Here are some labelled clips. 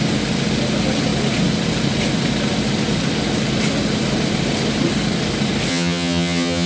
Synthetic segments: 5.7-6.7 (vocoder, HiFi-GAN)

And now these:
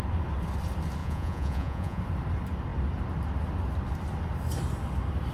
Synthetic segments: 1.0-2.0 (vocoder, Vocos)

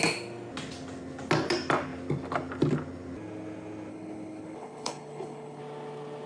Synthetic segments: 3.9-5.6 (codec, HILCodec)

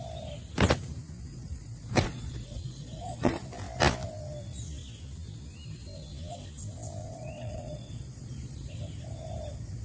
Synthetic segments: 1.3-3.4 (vocoder, Vocos); 7.0-8.7

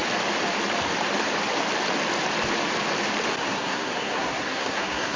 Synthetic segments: 3.4-5.2 (codec, SNAC)